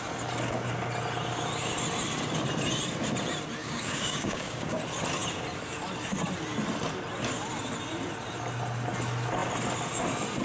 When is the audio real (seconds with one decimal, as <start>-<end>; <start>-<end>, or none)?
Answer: 0.0-3.6; 4.8-10.4